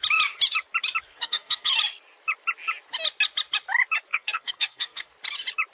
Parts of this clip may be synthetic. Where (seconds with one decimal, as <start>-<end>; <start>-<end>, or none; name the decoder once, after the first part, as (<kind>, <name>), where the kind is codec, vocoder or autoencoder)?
1.1-1.7 (codec, SNAC); 4.1-5.1